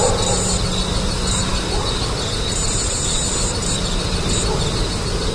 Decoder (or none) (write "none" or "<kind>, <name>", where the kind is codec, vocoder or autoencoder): none